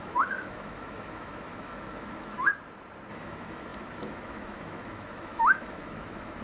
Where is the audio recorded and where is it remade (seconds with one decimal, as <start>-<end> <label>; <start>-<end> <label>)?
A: 0.0-2.5 remade; 2.5-3.1 recorded; 3.1-6.4 remade